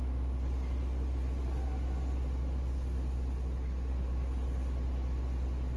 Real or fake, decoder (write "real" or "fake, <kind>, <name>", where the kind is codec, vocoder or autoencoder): real